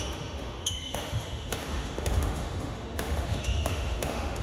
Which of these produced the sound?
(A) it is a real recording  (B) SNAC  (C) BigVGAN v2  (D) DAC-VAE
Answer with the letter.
D